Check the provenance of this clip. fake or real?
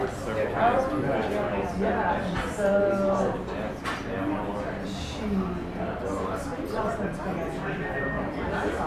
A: real